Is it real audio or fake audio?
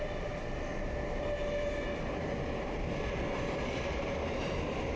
real